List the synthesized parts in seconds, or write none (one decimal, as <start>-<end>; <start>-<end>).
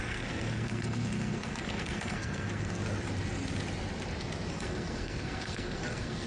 0.0-2.8; 4.5-6.3